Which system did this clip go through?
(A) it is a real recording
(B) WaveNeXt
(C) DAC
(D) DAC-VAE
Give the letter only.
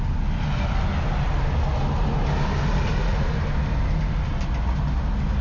A